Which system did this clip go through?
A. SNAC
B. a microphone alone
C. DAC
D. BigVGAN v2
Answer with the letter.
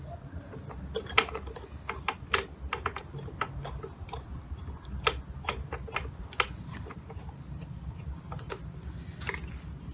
B